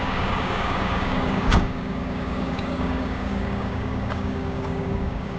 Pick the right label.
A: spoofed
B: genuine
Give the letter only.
A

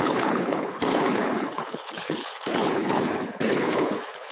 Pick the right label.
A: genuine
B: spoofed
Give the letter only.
B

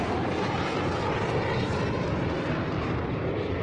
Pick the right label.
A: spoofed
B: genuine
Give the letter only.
A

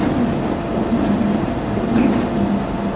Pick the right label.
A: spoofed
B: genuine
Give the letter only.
B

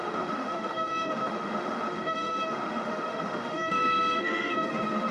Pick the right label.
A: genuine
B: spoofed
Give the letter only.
B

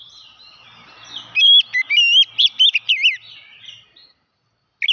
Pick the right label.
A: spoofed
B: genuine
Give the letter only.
B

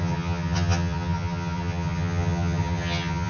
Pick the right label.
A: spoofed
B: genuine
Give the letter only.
A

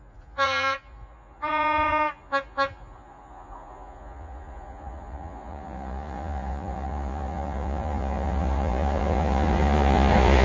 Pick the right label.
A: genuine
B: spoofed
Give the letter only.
B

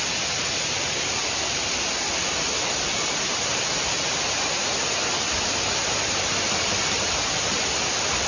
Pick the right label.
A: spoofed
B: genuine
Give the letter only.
B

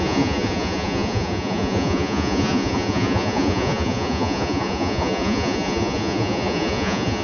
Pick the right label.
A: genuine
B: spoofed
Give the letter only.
B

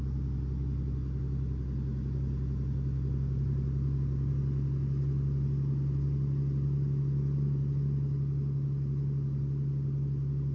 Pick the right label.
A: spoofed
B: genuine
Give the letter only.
B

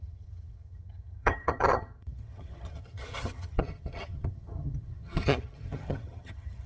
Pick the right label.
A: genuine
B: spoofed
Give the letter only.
B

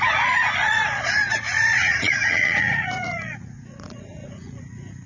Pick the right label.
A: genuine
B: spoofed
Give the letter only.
B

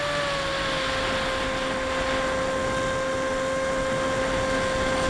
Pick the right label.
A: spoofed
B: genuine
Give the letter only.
B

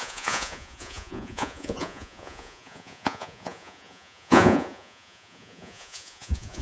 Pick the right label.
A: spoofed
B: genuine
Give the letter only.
A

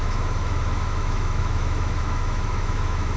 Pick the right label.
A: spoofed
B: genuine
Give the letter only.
A